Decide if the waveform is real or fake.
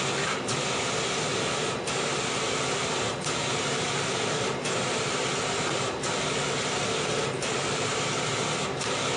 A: real